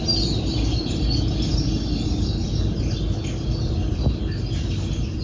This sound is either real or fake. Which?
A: real